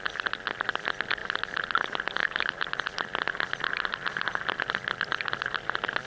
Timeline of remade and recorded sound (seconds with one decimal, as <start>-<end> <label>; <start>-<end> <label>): 0.0-2.2 recorded; 2.2-2.7 remade; 2.7-6.1 recorded